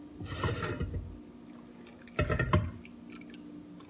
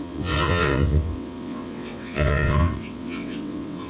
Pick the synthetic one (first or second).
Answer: second